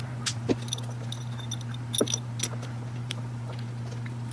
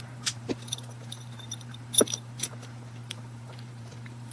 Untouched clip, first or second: first